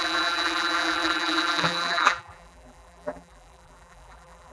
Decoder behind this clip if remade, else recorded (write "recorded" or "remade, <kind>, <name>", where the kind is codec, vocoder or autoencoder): remade, vocoder, BigVGAN v2